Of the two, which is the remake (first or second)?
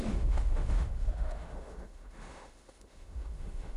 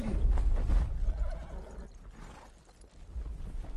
first